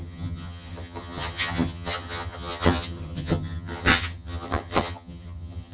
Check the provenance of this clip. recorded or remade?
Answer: remade